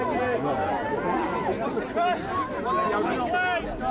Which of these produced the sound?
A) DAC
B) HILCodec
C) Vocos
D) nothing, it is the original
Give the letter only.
D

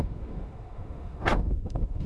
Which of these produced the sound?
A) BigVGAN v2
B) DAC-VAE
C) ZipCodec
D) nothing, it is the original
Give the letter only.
B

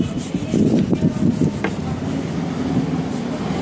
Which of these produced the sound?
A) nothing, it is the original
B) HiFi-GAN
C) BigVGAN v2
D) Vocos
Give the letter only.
A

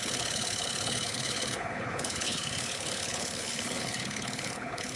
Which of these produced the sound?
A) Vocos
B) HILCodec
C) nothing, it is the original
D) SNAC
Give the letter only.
B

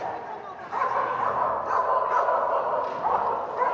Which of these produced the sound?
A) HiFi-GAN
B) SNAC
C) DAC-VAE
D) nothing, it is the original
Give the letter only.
D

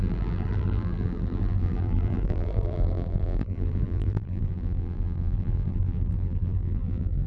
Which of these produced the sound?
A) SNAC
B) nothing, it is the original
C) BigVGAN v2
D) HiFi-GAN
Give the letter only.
C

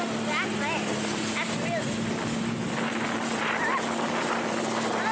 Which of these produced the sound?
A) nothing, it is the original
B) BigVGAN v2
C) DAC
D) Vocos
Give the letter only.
A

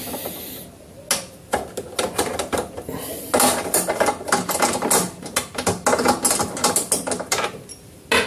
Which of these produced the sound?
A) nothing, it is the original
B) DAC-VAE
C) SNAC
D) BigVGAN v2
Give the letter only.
A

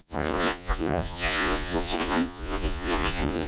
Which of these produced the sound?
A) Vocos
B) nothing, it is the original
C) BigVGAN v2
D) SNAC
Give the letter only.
A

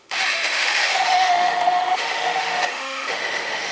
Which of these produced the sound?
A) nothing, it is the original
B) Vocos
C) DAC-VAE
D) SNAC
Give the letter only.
C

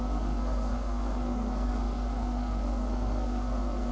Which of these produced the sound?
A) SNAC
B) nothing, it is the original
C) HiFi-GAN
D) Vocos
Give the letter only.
A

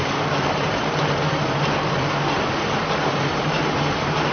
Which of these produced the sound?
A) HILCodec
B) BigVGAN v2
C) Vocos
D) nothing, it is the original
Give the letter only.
B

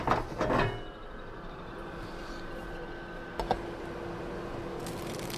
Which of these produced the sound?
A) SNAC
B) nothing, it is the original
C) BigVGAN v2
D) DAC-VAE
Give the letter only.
B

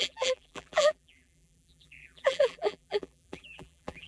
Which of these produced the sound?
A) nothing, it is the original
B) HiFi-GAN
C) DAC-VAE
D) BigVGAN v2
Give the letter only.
D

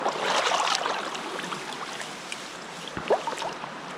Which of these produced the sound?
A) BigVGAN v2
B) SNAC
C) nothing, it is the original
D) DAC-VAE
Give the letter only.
C